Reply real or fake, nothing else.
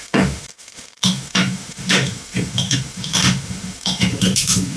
fake